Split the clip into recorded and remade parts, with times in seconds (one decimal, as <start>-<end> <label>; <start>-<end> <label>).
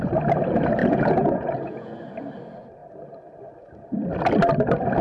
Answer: 0.0-0.8 recorded; 0.8-1.9 remade; 1.9-5.0 recorded